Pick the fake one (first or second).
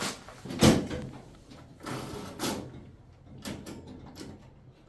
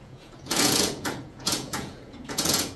second